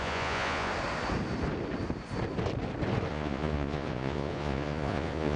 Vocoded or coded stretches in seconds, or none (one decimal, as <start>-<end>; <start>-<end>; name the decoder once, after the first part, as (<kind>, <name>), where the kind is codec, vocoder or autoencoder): 0.0-0.7 (vocoder, Vocos); 3.1-5.4